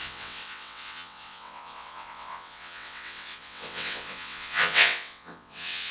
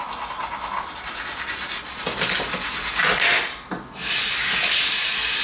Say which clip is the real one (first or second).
second